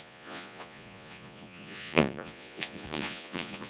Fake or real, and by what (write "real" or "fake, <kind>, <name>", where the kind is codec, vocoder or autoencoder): fake, vocoder, Vocos